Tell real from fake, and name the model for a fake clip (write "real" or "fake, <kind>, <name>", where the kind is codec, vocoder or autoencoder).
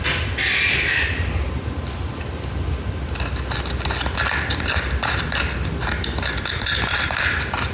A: real